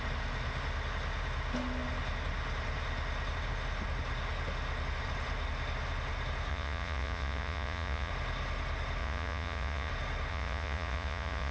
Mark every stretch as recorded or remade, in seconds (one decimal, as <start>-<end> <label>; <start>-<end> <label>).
0.0-6.5 recorded; 6.5-8.1 remade; 8.1-9.0 recorded; 9.0-9.9 remade; 9.9-10.3 recorded; 10.3-11.5 remade